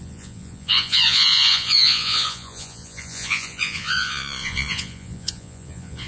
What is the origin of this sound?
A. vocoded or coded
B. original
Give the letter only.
A